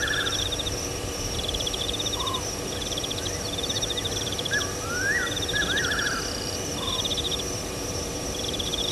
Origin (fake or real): fake